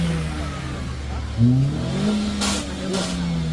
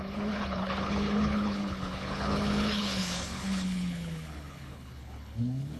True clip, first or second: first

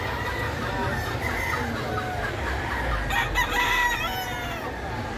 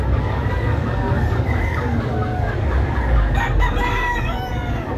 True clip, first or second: first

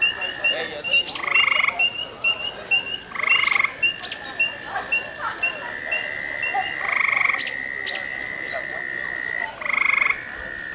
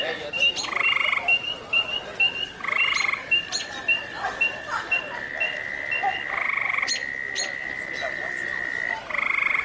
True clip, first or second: first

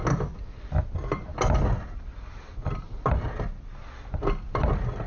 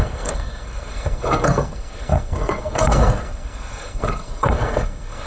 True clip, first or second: first